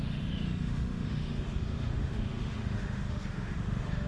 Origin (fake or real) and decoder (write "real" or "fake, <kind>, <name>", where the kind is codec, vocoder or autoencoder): fake, autoencoder, DAC-VAE